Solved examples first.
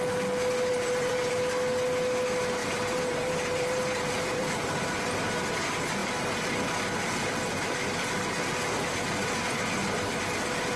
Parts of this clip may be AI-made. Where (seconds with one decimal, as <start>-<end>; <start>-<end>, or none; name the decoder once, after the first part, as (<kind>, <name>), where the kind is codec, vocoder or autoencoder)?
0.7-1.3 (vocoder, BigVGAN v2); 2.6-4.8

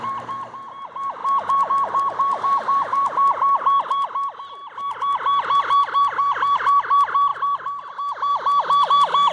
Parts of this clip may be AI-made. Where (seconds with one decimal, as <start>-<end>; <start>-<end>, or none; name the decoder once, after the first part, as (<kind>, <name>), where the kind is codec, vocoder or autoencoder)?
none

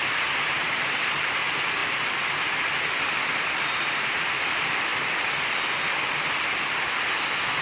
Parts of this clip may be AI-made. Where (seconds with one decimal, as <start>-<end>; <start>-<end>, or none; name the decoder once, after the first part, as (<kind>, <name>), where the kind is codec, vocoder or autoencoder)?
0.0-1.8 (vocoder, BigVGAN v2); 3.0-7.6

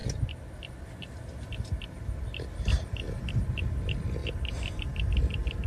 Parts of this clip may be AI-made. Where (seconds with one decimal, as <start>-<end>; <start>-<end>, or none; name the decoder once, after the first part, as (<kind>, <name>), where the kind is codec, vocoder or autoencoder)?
none

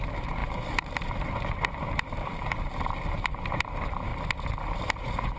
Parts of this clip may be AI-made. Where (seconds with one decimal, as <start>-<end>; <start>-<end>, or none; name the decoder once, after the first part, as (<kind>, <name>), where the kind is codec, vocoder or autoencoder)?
0.0-4.1 (vocoder, BigVGAN v2); 4.7-5.4

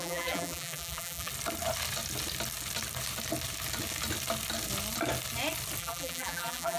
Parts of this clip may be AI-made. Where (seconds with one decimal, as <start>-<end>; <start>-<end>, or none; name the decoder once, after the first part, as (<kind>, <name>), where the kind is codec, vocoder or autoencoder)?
0.0-1.3 (vocoder, BigVGAN v2); 5.8-6.8